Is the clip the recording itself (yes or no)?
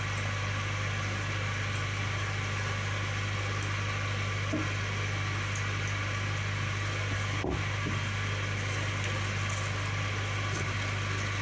yes